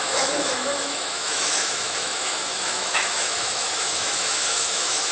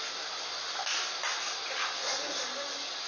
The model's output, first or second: first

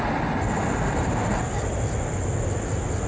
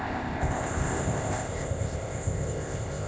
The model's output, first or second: second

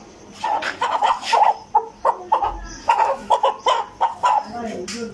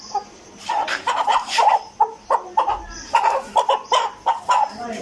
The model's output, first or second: second